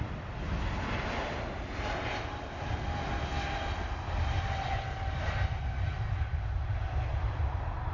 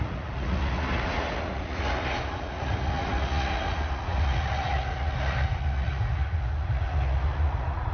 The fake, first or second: second